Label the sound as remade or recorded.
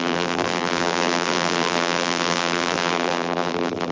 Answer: remade